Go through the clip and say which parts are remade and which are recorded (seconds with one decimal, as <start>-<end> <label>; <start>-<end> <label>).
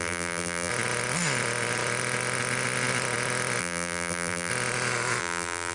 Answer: 0.0-0.7 remade; 0.7-3.6 recorded; 3.6-4.5 remade; 4.5-5.2 recorded; 5.2-5.7 remade